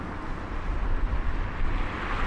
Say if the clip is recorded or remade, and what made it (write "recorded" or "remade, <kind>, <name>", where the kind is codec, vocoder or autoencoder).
recorded